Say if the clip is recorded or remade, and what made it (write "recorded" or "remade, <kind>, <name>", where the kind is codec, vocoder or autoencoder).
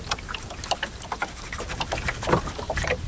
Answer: recorded